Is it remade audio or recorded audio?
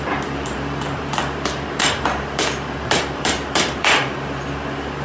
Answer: remade